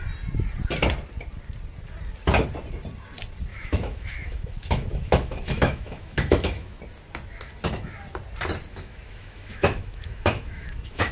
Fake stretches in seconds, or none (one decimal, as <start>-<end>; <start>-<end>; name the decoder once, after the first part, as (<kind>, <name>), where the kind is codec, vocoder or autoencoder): 3.5-6.8 (autoencoder, DAC-VAE); 8.7-11.1